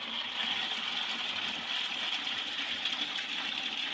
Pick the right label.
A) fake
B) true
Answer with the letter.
B